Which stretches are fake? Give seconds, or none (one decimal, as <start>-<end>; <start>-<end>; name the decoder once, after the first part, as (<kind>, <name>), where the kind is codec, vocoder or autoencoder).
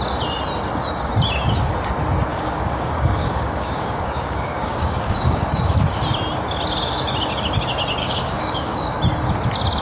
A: 2.3-5.6 (codec, DAC); 8.0-9.0